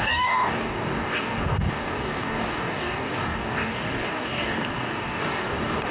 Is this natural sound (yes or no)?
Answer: no